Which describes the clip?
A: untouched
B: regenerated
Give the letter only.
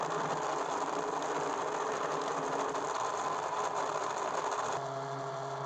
A